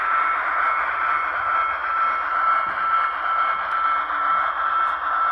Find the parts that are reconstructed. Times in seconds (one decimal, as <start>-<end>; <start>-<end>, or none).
none